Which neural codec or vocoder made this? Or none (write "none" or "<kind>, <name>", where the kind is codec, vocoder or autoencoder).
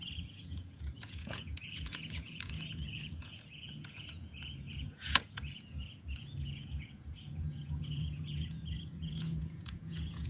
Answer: vocoder, Vocos